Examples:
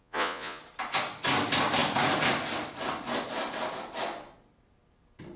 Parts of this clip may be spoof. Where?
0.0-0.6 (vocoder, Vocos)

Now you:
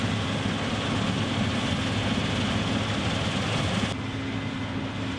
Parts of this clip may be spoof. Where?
none